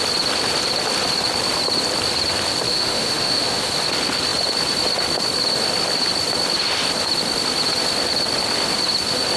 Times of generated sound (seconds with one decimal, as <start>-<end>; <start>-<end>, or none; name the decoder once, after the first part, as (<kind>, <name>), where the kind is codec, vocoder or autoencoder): 2.7-3.7 (autoencoder, DAC-VAE)